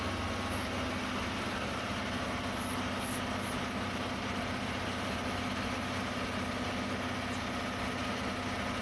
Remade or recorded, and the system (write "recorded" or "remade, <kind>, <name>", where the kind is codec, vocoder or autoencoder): recorded